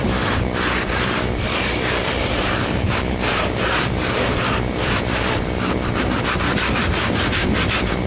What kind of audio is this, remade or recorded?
remade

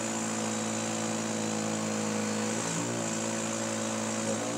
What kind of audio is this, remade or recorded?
recorded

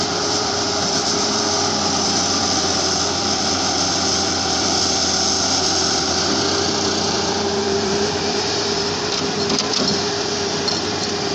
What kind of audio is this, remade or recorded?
remade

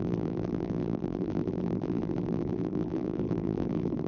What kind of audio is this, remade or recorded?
remade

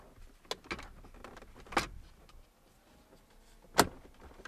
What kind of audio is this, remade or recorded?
recorded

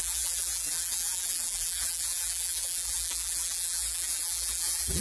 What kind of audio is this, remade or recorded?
remade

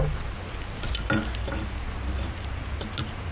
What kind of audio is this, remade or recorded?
recorded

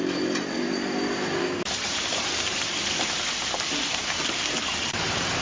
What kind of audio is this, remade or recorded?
remade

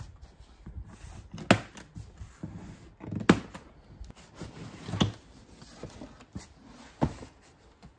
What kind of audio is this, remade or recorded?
recorded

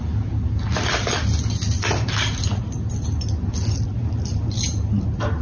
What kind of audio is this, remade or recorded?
recorded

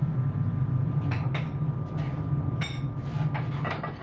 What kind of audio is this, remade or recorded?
recorded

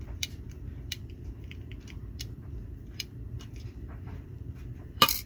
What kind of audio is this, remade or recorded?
remade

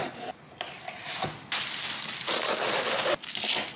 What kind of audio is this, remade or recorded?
remade